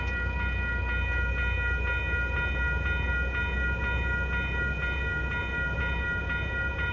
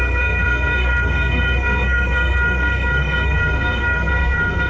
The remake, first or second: second